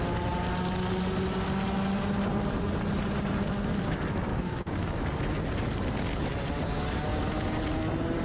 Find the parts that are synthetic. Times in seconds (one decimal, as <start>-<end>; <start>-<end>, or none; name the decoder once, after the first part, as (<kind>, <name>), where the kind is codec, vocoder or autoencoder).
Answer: 4.3-5.0 (codec, DAC)